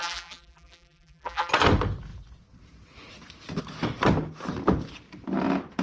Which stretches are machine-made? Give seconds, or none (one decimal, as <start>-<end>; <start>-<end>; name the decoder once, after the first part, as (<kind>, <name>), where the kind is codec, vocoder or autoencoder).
0.0-1.5 (vocoder, BigVGAN v2)